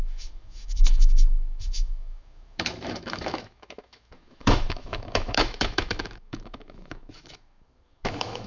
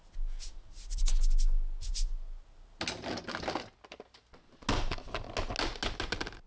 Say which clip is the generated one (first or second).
first